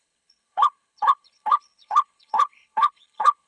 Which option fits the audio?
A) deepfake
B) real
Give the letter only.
A